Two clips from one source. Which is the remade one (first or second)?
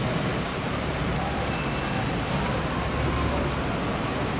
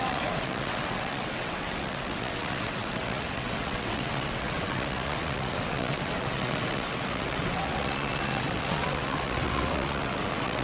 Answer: second